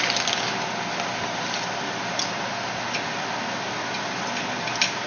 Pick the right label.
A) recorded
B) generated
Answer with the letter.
A